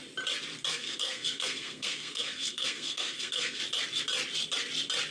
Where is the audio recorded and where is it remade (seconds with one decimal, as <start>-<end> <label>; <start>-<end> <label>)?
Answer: 0.0-0.7 recorded; 0.7-3.6 remade; 3.6-5.1 recorded